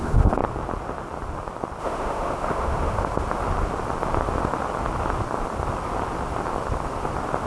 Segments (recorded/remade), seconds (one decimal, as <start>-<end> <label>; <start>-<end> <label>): 0.0-0.4 remade; 0.4-1.8 recorded; 1.8-3.1 remade; 3.1-7.5 recorded